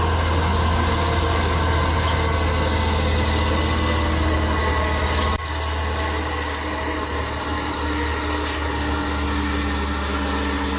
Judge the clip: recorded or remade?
recorded